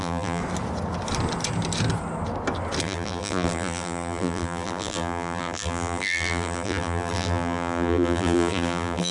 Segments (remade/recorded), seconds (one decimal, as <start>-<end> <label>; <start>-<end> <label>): 0.0-0.4 remade; 0.4-2.8 recorded; 2.8-9.1 remade